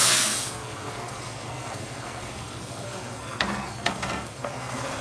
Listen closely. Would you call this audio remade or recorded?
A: remade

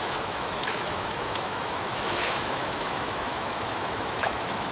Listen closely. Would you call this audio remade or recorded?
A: remade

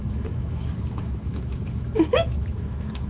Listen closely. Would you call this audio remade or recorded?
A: remade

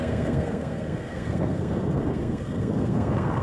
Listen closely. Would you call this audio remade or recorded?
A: remade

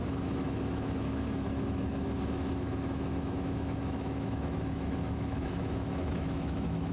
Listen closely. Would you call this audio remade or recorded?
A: remade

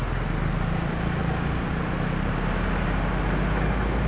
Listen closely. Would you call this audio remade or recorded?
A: recorded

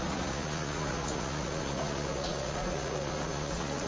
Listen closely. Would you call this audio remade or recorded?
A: remade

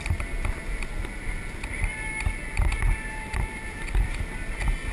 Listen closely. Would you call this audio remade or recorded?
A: recorded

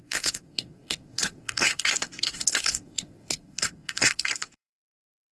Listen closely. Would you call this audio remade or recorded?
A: remade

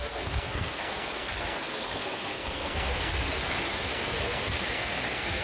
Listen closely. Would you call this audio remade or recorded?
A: remade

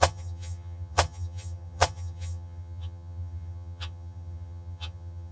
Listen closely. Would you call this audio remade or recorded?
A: remade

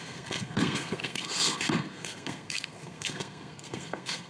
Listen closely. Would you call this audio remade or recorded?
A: remade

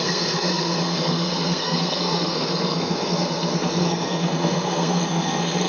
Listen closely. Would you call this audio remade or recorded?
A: remade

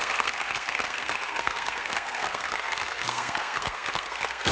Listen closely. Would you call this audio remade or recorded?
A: remade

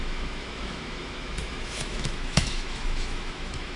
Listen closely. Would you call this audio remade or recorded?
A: remade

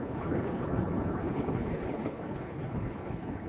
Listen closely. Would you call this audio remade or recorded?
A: remade